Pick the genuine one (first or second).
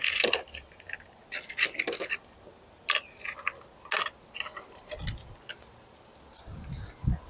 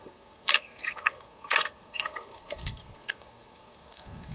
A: first